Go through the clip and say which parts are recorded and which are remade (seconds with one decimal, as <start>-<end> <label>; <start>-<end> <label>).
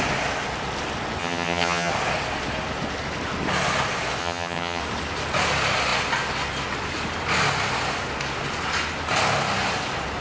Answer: 0.0-1.2 recorded; 1.2-1.9 remade; 1.9-4.2 recorded; 4.2-4.8 remade; 4.8-10.2 recorded